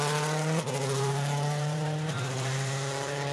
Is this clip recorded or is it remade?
remade